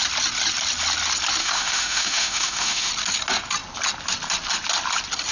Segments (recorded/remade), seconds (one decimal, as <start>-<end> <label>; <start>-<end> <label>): 0.0-1.4 recorded; 1.4-2.9 remade; 2.9-5.3 recorded